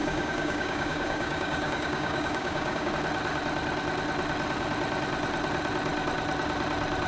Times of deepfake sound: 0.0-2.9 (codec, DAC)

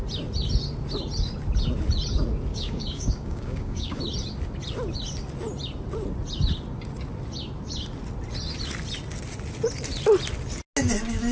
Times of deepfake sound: 2.5-4.0 (codec, DAC)

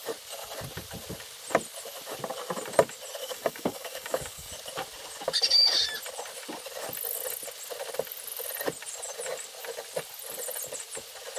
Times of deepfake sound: 3.2-4.5 (codec, DAC)

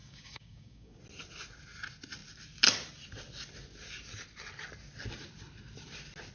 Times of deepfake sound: 0.0-1.0 (codec, DAC)

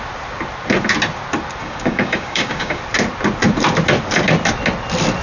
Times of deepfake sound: 1.6-2.8 (codec, DAC)

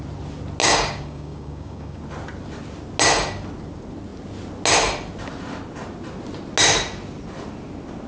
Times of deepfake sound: 0.6-2.0 (codec, DAC)

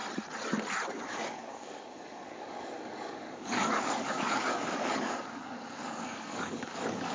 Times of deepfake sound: 0.9-7.1 (codec, DAC)